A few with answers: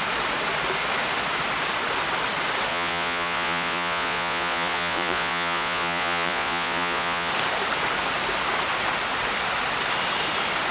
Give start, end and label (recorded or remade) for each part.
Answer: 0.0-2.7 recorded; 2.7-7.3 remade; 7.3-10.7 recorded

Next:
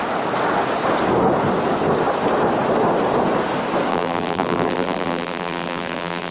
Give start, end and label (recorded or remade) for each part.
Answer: 0.0-3.9 recorded; 3.9-6.3 remade

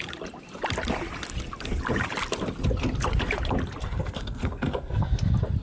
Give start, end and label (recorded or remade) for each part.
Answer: 0.0-3.8 recorded; 3.8-5.1 remade; 5.1-5.6 recorded

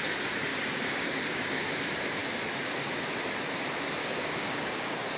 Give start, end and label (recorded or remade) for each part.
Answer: 0.0-0.5 recorded; 0.5-1.7 remade; 1.7-4.0 recorded; 4.0-5.2 remade

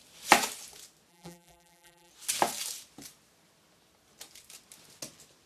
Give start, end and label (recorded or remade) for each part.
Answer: 0.0-1.1 recorded; 1.1-2.1 remade; 2.1-5.5 recorded

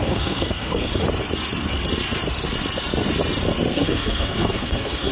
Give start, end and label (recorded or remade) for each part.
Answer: 0.0-0.9 remade; 0.9-3.7 recorded; 3.7-5.1 remade

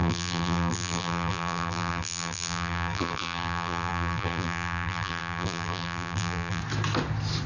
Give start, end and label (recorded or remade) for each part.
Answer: 0.0-6.6 remade; 6.6-7.5 recorded